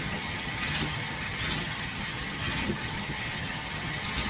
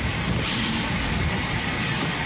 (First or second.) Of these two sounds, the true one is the second